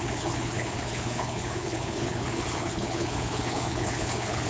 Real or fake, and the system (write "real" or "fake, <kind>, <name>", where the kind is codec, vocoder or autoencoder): fake, codec, HILCodec